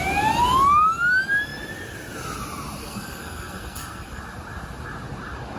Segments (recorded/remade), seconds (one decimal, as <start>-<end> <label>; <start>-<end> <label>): 0.0-2.8 recorded; 2.8-4.2 remade; 4.2-5.6 recorded